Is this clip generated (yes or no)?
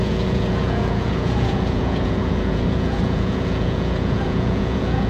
yes